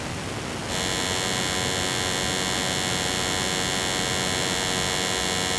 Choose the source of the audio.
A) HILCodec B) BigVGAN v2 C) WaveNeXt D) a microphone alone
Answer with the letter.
D